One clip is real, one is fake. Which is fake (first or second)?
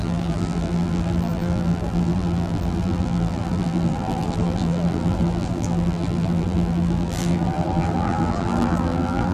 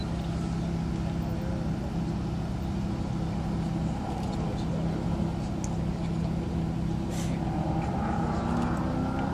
first